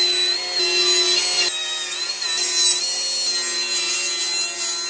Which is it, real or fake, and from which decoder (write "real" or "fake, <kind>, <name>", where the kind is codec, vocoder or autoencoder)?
real